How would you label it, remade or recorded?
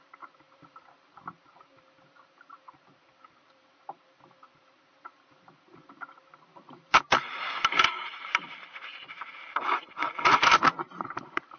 remade